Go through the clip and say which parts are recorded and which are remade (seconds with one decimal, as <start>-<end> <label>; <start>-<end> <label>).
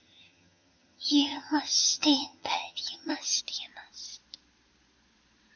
0.0-3.4 remade; 3.4-5.6 recorded